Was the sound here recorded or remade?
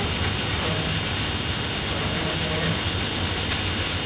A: recorded